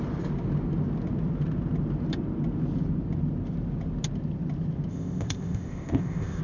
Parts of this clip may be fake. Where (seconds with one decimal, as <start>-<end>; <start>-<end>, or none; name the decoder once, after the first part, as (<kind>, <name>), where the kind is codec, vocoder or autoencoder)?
4.9-6.4 (codec, ZipCodec)